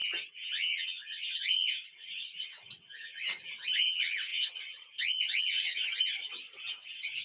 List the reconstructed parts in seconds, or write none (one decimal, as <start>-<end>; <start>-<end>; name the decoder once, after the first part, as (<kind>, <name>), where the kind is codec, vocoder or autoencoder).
0.0-7.2 (vocoder, WaveNeXt)